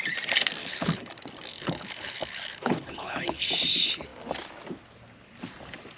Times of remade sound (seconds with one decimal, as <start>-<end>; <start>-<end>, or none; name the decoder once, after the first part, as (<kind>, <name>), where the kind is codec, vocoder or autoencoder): 0.6-1.1 (codec, HILCodec); 1.5-3.5